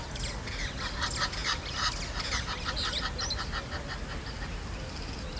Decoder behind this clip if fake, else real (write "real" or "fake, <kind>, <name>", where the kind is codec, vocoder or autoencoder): real